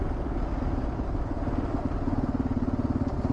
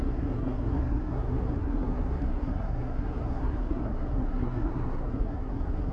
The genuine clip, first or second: first